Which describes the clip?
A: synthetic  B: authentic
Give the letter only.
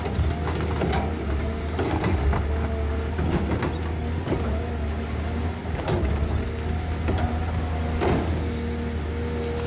B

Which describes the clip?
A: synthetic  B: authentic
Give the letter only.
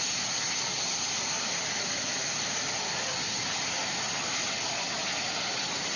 B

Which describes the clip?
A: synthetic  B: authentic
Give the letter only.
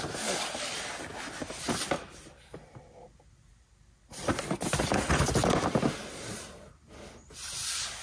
B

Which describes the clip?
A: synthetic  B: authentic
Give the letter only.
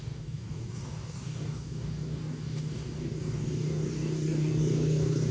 A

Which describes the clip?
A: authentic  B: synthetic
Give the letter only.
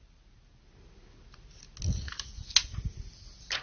A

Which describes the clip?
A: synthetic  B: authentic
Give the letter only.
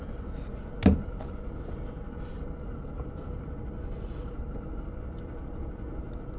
B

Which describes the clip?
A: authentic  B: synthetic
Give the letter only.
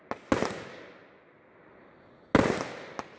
A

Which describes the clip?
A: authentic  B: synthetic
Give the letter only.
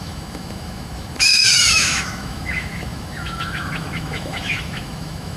B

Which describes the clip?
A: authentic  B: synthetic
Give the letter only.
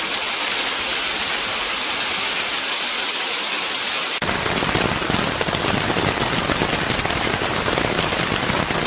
A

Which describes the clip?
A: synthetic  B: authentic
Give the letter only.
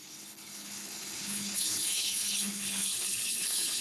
A